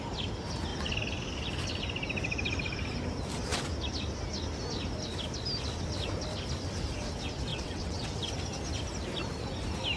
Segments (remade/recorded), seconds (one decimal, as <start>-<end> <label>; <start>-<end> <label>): 0.0-7.5 recorded; 7.5-8.3 remade; 8.3-10.0 recorded